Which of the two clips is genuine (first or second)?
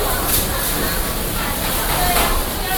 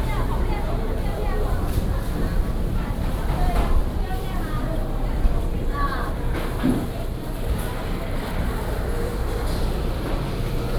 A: first